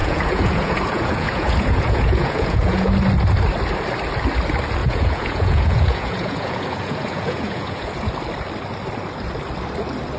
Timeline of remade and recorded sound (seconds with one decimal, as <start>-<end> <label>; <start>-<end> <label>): 0.0-2.9 remade; 2.9-4.8 recorded; 4.8-8.1 remade; 8.1-10.2 recorded